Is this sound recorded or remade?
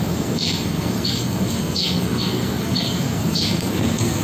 remade